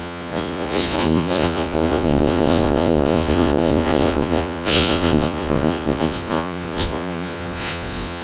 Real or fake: fake